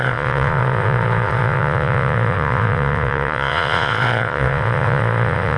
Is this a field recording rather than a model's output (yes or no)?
no